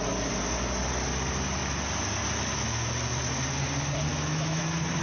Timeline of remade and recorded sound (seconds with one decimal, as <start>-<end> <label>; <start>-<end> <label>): 0.0-4.1 recorded; 4.1-4.6 remade; 4.6-5.0 recorded